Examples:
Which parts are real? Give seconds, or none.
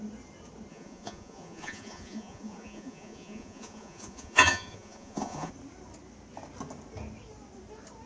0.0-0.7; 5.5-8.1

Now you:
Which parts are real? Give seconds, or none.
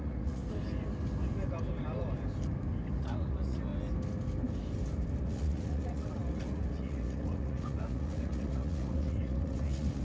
0.4-3.0; 3.7-5.2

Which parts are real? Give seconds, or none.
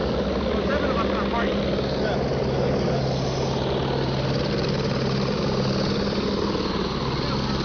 0.0-7.6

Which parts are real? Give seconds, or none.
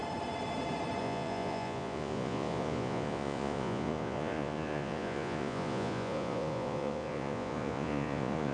0.0-1.0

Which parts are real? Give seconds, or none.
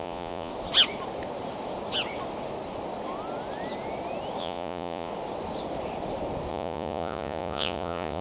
0.5-4.4; 5.1-6.5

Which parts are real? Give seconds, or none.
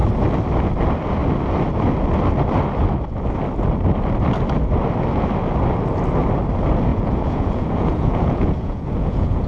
0.0-6.9